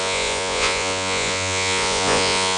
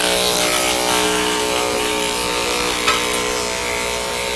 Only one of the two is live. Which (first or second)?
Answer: second